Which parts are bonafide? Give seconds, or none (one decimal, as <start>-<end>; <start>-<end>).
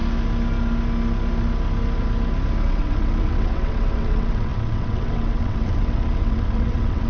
0.0-2.6